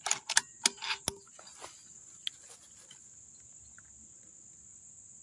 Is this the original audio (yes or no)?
yes